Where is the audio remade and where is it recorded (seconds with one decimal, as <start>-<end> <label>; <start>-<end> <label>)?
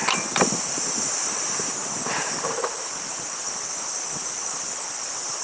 0.0-5.4 recorded